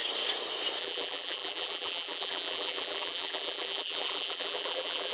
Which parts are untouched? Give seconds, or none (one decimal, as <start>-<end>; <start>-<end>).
0.0-0.8